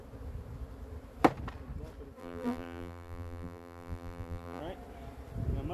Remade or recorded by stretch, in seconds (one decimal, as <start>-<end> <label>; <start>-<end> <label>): 0.0-2.2 recorded; 2.2-4.6 remade; 4.6-5.7 recorded